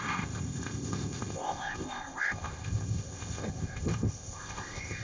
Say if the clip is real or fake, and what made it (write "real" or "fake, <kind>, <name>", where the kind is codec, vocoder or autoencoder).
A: fake, codec, ZipCodec